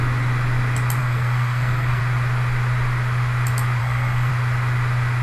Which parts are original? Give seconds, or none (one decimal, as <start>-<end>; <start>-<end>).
0.0-1.0; 2.0-3.8; 4.3-5.2

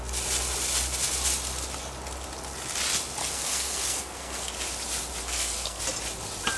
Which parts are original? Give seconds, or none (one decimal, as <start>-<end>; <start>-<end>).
0.0-3.2; 4.5-5.2; 5.8-6.6

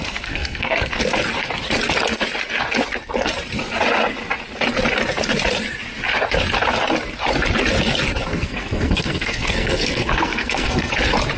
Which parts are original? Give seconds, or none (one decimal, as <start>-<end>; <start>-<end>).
1.0-8.3; 10.9-11.4

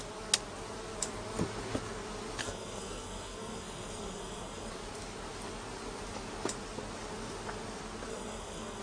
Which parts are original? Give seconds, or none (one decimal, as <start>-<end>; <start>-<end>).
0.0-2.4; 4.7-8.1